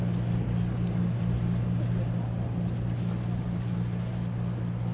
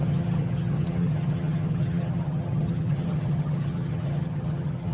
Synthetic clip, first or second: second